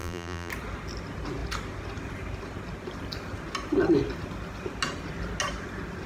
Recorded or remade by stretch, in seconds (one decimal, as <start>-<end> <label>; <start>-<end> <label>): 0.0-0.5 remade; 0.5-6.1 recorded

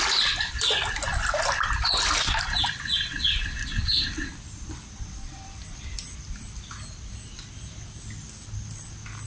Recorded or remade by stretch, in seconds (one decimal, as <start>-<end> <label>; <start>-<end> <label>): 0.0-9.3 recorded